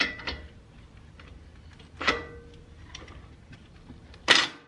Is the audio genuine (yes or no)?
no